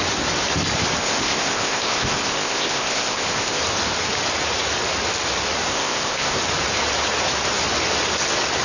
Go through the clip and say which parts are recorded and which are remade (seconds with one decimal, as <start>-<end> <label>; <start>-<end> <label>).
0.0-1.0 recorded; 1.0-3.6 remade; 3.6-5.7 recorded; 5.7-6.4 remade; 6.4-8.6 recorded